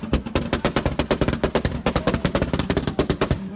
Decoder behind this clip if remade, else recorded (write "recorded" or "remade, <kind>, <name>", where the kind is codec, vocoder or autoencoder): recorded